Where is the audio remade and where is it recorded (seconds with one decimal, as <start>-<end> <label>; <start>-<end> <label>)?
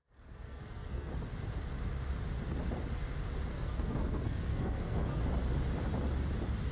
0.0-1.1 remade; 1.1-3.5 recorded; 3.5-5.2 remade; 5.2-6.7 recorded